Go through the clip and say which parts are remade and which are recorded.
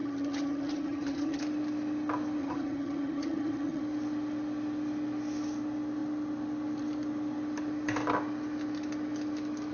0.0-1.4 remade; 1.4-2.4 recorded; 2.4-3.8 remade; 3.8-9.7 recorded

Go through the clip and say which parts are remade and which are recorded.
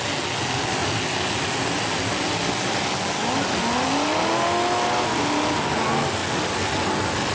0.0-7.3 recorded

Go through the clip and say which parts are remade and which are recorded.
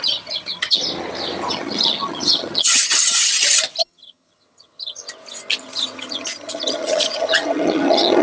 0.0-0.8 remade; 0.8-1.5 recorded; 1.5-3.2 remade; 3.2-3.8 recorded; 3.8-5.0 remade; 5.0-5.6 recorded; 5.6-8.2 remade